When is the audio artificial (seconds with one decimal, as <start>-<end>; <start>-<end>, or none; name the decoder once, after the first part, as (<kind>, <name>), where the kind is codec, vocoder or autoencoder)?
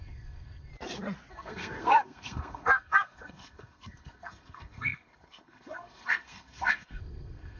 0.0-0.7 (codec, SNAC); 1.3-7.6